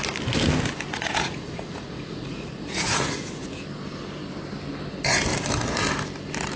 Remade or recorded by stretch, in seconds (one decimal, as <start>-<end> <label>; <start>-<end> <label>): 0.0-0.9 recorded; 0.9-3.4 remade; 3.4-6.6 recorded